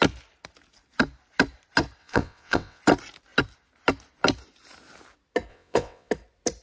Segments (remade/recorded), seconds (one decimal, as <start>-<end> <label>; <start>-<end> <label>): 0.0-2.0 recorded; 2.0-2.8 remade; 2.8-5.5 recorded; 5.5-6.1 remade; 6.1-6.6 recorded